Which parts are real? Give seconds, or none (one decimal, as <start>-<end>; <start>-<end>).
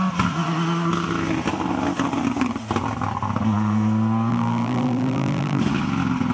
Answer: 0.0-4.3; 5.6-6.3